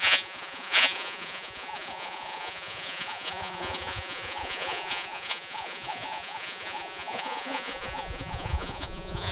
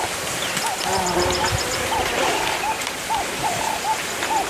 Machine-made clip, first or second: first